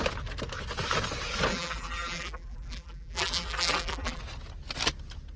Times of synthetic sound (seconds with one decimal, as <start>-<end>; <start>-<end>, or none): 1.5-4.2